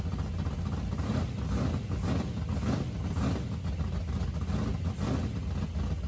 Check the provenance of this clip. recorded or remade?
recorded